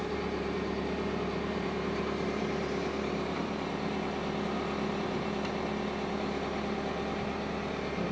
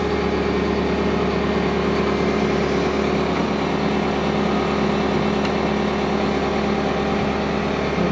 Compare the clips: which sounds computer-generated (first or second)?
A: first